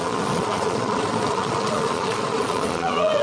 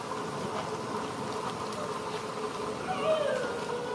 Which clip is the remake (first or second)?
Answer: first